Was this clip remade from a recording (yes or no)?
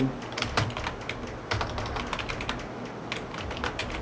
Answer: no